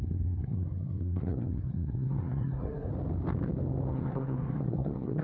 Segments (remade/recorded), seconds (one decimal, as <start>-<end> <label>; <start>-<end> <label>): 0.0-2.9 remade; 2.9-3.9 recorded; 3.9-5.2 remade